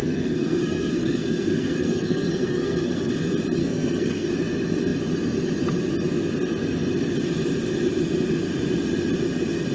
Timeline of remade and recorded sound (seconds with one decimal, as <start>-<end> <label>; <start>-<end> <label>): 0.0-3.1 remade; 3.1-3.6 recorded; 3.6-4.3 remade; 4.3-9.7 recorded